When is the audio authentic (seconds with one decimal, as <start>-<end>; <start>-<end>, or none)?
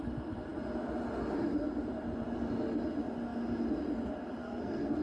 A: 0.0-4.4